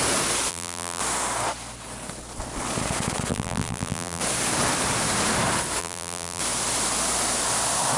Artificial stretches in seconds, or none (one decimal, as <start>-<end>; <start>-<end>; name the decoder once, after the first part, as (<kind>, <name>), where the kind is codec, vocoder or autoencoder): 0.5-1.0 (vocoder, BigVGAN v2); 3.3-4.2; 5.8-6.4